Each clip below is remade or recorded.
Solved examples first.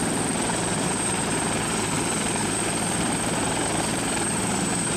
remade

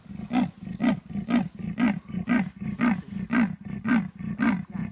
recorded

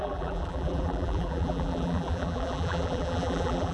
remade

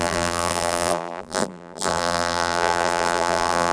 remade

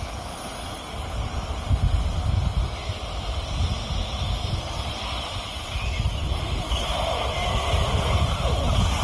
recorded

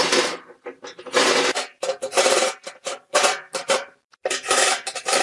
remade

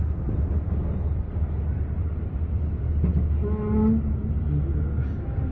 recorded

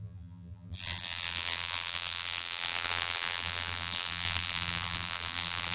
remade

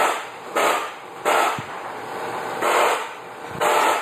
remade